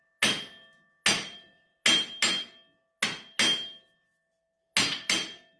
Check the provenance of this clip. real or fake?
real